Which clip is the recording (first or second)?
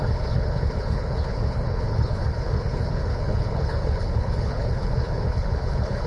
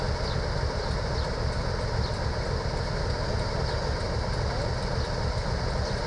second